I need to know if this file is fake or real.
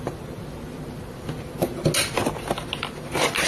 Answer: real